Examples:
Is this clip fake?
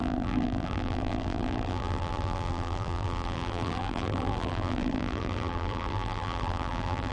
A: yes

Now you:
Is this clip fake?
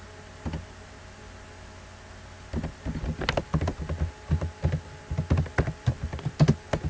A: no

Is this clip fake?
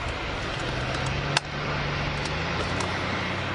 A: no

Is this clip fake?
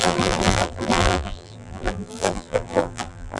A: yes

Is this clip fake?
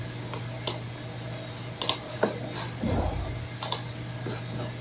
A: no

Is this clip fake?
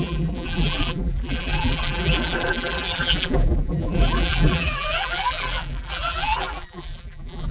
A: yes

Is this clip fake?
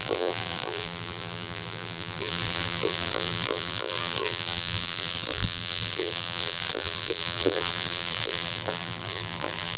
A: yes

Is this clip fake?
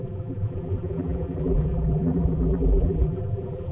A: yes